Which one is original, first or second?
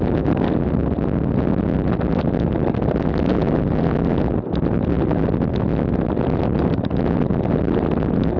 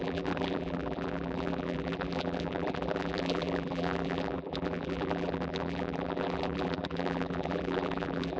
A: first